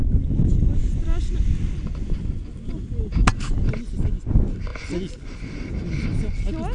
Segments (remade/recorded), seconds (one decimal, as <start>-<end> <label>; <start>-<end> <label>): 0.0-6.7 recorded